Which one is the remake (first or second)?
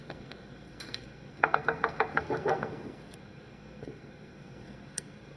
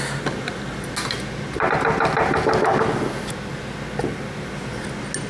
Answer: first